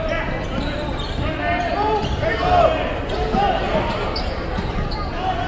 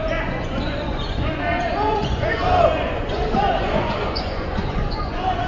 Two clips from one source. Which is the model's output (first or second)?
second